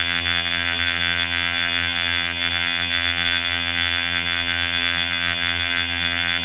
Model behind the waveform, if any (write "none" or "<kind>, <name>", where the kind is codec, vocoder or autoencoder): vocoder, BigVGAN v2